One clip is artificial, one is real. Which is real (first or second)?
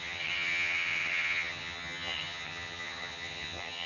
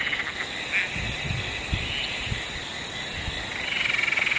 second